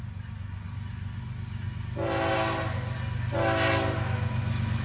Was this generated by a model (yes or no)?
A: no